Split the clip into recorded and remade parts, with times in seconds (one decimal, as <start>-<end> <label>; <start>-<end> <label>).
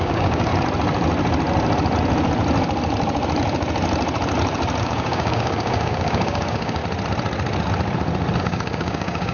0.0-0.5 remade; 0.5-4.8 recorded; 4.8-6.8 remade; 6.8-8.4 recorded; 8.4-9.3 remade